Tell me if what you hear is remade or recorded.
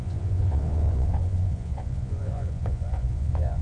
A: remade